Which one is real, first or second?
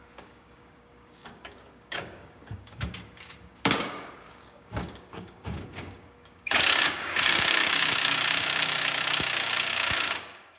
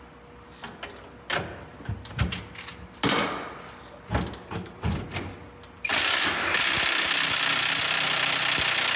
second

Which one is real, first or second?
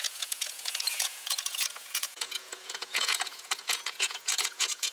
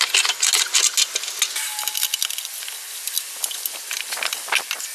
second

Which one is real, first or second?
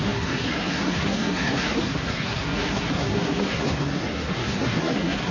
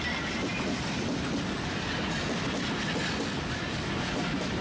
second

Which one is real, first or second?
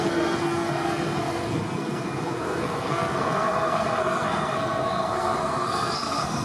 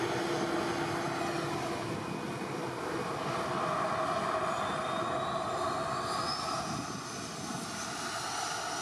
second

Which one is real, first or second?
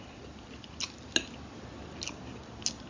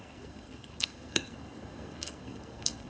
first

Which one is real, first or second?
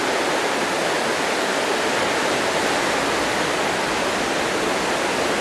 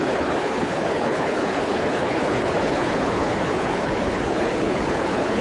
first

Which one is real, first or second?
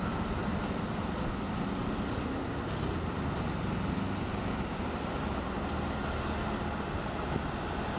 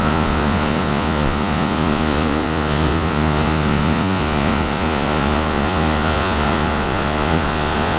first